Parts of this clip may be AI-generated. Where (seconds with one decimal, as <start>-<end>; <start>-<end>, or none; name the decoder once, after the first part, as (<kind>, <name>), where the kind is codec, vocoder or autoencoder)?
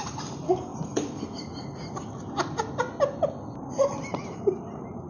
0.0-0.7 (vocoder, BigVGAN v2); 3.6-5.1